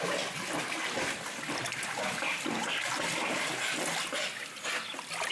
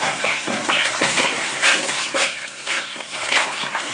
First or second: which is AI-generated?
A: second